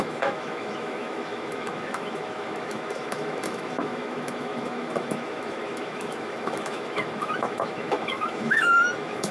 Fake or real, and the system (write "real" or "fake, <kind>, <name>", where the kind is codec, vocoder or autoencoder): fake, autoencoder, DAC-VAE